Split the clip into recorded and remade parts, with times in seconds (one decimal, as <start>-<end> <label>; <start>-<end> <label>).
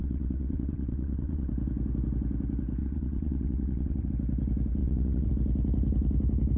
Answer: 0.0-1.5 remade; 1.5-2.8 recorded; 2.8-4.1 remade; 4.1-4.8 recorded; 4.8-5.3 remade; 5.3-6.6 recorded